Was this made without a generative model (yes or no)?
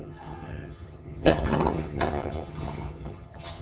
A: no